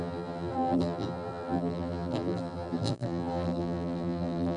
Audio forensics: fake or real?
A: fake